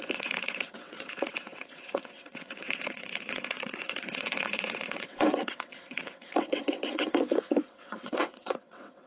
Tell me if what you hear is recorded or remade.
remade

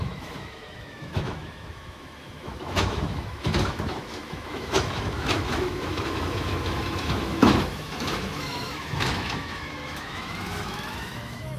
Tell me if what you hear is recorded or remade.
remade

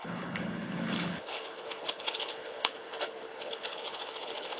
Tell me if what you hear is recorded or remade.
remade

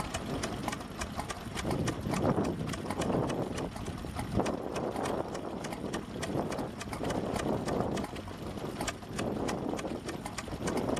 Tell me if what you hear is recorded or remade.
recorded